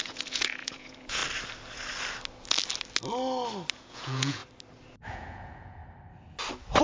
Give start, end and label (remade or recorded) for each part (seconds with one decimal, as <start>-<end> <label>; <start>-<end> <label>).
0.0-1.2 remade; 1.2-3.7 recorded; 3.7-4.4 remade; 4.4-5.1 recorded; 5.1-5.8 remade; 5.8-6.8 recorded